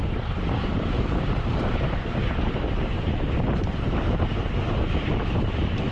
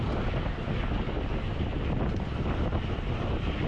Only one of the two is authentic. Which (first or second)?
second